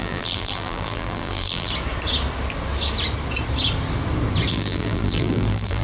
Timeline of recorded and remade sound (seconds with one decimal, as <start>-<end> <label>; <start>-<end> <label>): 0.0-1.7 remade; 1.7-4.5 recorded; 4.5-5.8 remade